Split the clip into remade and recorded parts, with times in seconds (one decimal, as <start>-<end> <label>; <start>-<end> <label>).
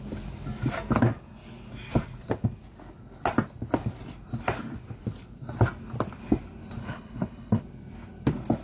0.0-6.8 recorded; 6.8-7.6 remade; 7.6-8.6 recorded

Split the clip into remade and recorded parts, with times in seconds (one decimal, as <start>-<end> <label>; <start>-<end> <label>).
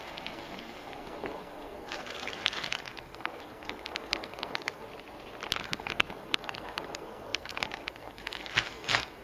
0.0-4.9 remade; 4.9-5.6 recorded; 5.6-9.2 remade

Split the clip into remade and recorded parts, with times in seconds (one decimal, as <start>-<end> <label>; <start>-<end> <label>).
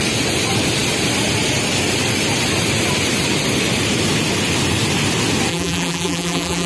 0.0-5.5 recorded; 5.5-6.7 remade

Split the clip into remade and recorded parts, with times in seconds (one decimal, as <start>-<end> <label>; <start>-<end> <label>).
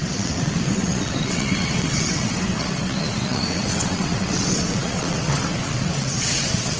0.0-6.8 remade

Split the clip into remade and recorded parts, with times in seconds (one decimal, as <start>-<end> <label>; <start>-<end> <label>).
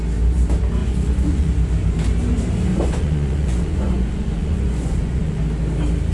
0.0-0.8 recorded; 0.8-1.5 remade; 1.5-2.7 recorded; 2.7-5.4 remade; 5.4-6.1 recorded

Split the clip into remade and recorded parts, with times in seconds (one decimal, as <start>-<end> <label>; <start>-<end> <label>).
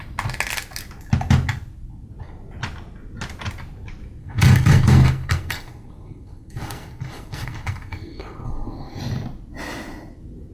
0.0-4.2 recorded; 4.2-9.0 remade; 9.0-10.5 recorded